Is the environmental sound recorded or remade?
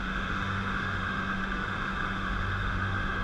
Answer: remade